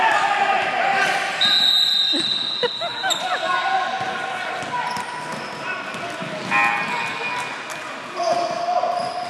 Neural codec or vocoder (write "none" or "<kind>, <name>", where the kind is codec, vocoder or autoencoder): none